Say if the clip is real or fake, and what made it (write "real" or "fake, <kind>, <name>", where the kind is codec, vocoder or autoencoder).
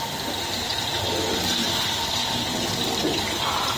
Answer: fake, vocoder, BigVGAN v2